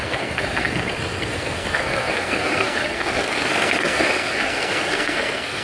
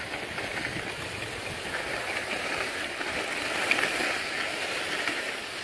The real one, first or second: second